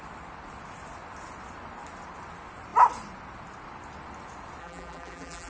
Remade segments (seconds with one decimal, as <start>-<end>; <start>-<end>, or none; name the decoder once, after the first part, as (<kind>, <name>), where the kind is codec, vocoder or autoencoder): 4.6-5.5 (vocoder, BigVGAN v2)